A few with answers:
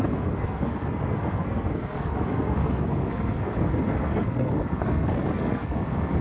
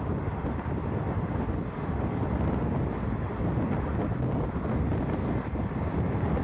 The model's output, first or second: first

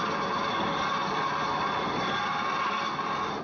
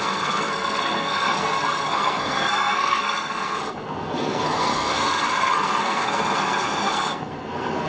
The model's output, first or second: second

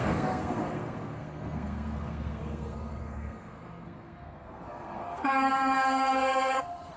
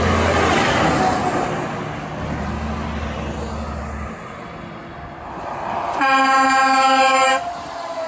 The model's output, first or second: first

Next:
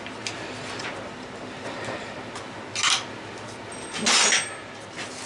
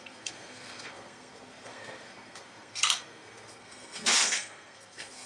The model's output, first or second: second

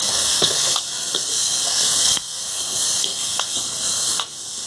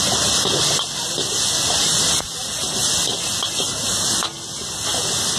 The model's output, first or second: first